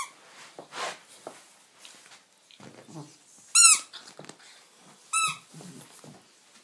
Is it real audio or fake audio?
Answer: real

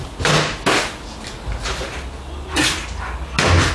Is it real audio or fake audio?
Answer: real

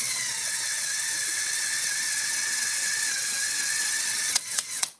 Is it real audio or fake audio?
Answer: fake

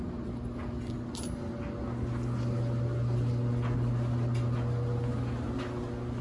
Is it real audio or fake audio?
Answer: real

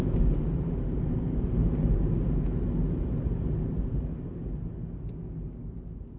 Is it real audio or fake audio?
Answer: real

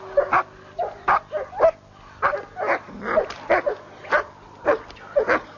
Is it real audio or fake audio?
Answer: real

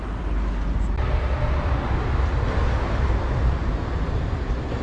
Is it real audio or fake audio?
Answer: real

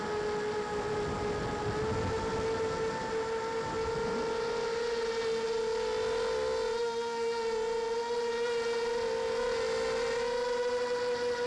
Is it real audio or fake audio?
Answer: real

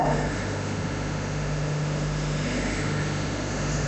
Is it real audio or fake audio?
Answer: fake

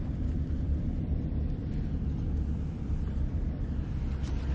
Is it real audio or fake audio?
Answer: fake